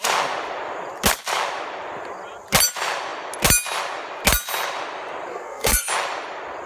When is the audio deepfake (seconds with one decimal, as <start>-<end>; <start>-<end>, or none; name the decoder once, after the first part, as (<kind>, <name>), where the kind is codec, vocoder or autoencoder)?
5.3-5.9 (codec, SNAC)

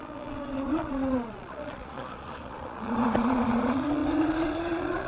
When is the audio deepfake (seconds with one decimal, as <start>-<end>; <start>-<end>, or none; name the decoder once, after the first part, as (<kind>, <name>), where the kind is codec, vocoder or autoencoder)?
0.0-5.1 (vocoder, Vocos)

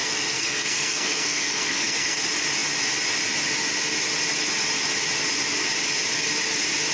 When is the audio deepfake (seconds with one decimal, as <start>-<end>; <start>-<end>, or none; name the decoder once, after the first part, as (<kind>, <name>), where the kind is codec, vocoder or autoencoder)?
0.0-2.2 (codec, SNAC)

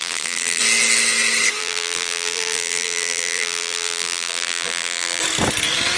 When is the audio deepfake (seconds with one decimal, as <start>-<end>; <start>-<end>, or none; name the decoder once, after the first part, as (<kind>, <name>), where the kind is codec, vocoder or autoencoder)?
0.0-0.6 (vocoder, BigVGAN v2); 1.6-5.2

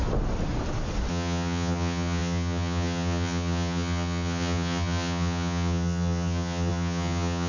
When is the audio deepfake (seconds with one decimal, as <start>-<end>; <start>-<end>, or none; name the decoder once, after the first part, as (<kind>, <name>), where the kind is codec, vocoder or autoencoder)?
1.1-7.5 (vocoder, HiFi-GAN)

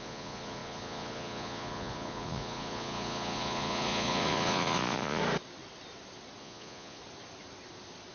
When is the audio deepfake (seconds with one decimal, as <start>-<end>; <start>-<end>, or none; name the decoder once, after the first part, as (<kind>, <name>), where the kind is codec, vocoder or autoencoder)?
0.0-5.2 (vocoder, Vocos); 6.4-7.0